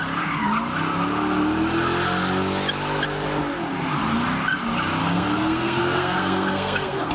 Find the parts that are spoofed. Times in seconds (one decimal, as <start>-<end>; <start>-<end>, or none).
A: 5.0-7.1